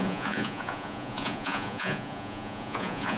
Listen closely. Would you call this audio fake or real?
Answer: fake